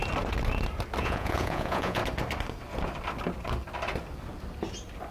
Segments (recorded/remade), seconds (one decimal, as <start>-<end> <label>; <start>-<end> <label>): 0.0-1.0 recorded; 1.0-2.0 remade; 2.0-5.1 recorded